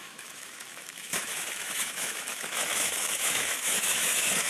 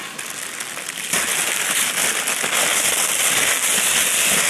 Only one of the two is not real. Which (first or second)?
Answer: first